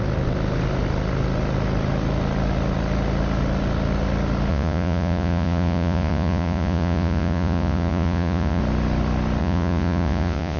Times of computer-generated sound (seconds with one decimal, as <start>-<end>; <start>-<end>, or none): 4.5-8.6; 9.4-10.6